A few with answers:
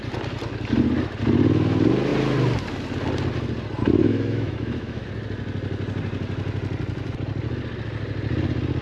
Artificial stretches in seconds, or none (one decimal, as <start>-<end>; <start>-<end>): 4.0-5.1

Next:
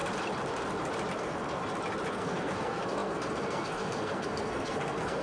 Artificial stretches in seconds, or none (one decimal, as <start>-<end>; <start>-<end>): 1.1-1.6; 2.1-5.2

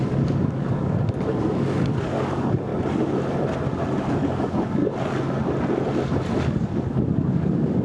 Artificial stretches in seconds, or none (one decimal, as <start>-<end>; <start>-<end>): 0.0-2.7; 4.0-4.8; 6.4-7.8

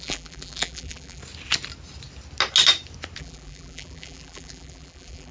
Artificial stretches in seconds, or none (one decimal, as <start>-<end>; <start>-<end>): 0.0-1.2; 3.2-5.3

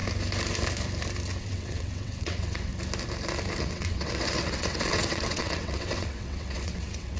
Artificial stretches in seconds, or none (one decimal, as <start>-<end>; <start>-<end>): 1.4-2.7; 3.6-7.2

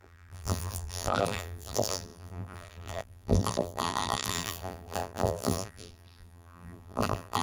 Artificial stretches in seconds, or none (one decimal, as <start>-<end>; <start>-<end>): 0.0-7.4